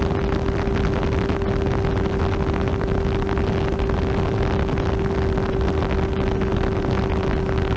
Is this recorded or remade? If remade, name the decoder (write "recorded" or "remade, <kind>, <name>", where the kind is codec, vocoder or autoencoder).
recorded